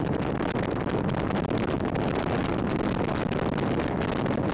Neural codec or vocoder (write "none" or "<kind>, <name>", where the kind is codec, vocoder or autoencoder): none